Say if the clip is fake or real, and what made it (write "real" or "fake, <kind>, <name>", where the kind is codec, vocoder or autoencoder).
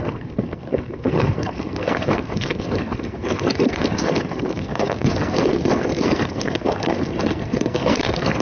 fake, codec, SNAC